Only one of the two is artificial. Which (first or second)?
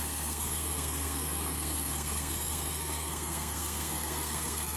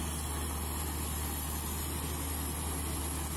first